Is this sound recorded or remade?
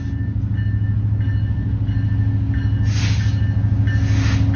recorded